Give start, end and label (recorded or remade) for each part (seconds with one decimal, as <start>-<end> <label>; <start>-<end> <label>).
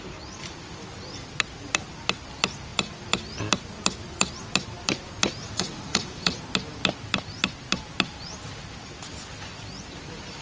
0.0-5.4 recorded; 5.4-6.4 remade; 6.4-10.4 recorded